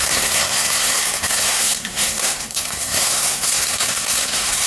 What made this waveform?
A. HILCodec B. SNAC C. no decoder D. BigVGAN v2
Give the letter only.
B